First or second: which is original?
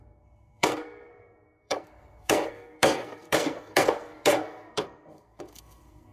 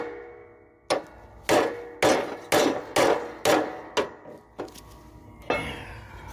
second